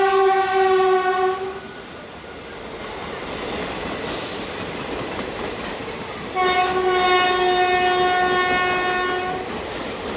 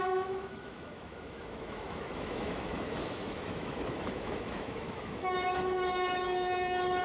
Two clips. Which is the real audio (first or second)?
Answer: first